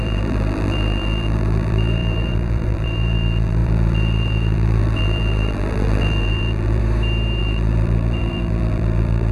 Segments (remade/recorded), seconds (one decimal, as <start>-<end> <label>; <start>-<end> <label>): 0.0-6.8 remade; 6.8-7.4 recorded; 7.4-9.3 remade